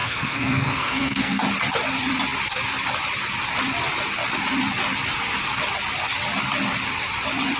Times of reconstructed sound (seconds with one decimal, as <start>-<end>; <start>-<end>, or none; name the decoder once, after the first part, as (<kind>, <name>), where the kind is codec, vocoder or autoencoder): 0.0-1.4 (codec, SNAC)